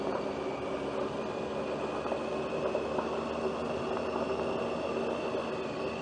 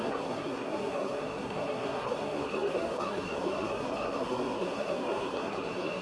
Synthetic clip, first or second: second